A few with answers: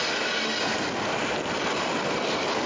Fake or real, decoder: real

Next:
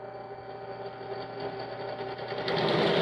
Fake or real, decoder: real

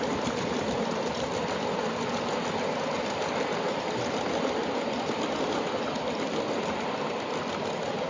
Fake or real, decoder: real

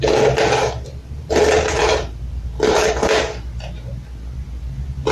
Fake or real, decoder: real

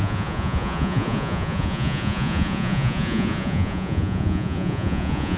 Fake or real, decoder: fake, vocoder, Vocos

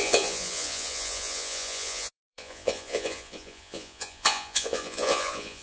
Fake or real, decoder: fake, vocoder, Vocos